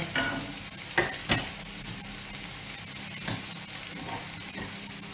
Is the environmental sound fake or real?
real